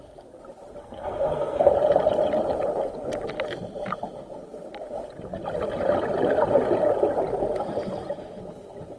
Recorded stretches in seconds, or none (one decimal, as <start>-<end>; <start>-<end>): 0.0-0.8; 1.7-9.0